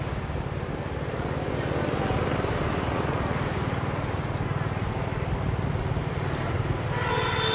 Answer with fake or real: real